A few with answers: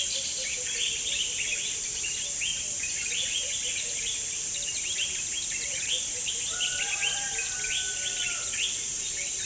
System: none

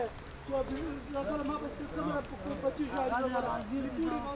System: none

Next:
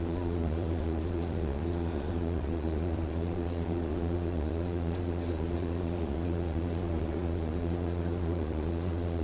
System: vocoder, Vocos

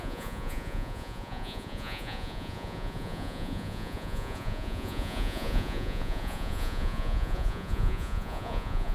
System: vocoder, Vocos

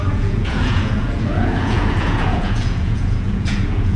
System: vocoder, Vocos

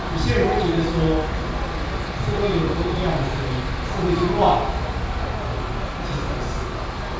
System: none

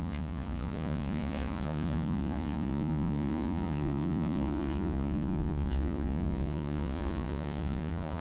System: vocoder, Vocos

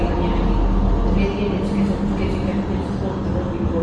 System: none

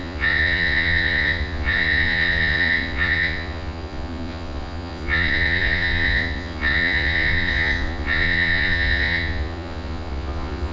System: vocoder, Vocos